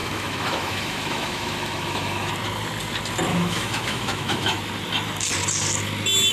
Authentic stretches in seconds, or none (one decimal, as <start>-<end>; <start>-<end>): 2.3-3.3; 4.6-6.3